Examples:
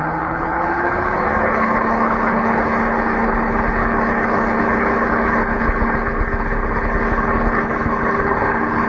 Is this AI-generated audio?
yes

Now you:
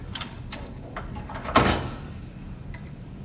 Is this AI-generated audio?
yes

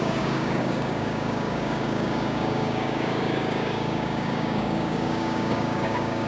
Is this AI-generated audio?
yes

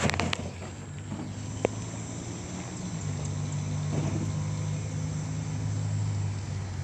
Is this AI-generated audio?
no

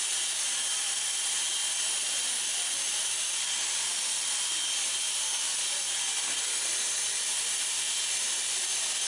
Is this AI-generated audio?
yes